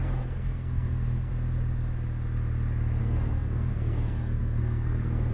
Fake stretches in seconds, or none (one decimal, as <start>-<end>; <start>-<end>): 0.0-1.3; 3.0-5.3